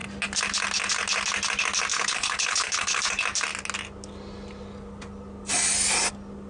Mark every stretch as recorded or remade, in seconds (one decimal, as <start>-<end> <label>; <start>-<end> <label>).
0.0-1.9 recorded; 1.9-3.0 remade; 3.0-6.5 recorded